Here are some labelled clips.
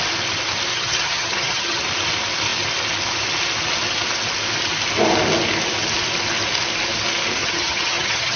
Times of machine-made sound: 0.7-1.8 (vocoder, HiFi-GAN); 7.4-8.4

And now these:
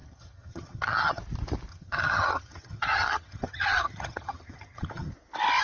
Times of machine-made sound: 0.0-1.2 (vocoder, HiFi-GAN); 1.7-5.1

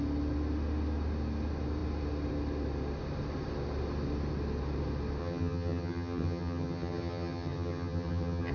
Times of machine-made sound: 5.2-8.5 (vocoder, HiFi-GAN)

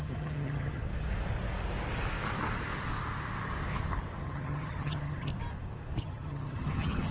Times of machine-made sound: 0.0-0.8 (vocoder, HiFi-GAN); 4.2-5.3; 6.0-7.1

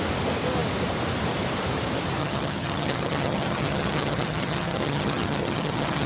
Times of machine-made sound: 2.2-6.1 (vocoder, HiFi-GAN)

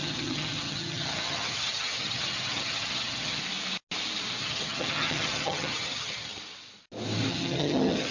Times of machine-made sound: 0.0-3.4 (vocoder, HiFi-GAN); 4.4-6.4; 7.3-8.1

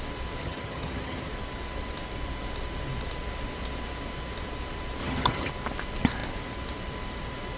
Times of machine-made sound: 0.4-1.3 (vocoder, HiFi-GAN); 5.0-5.5

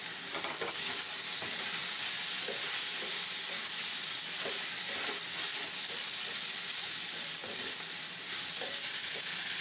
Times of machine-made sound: none